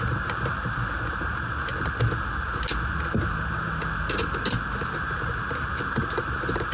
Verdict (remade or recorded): recorded